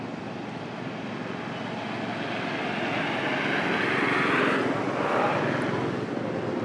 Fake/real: real